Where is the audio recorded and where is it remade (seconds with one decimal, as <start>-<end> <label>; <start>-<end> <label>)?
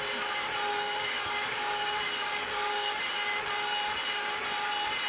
0.0-0.7 recorded; 0.7-3.0 remade; 3.0-5.1 recorded